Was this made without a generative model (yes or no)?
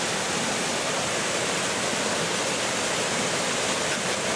yes